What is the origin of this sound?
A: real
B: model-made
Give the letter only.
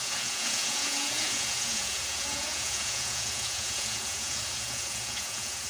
B